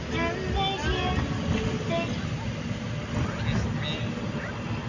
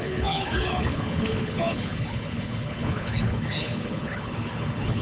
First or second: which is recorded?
first